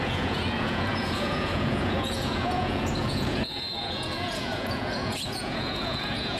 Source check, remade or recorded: remade